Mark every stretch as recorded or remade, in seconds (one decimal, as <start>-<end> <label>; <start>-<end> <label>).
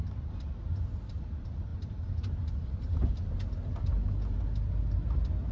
0.0-5.5 recorded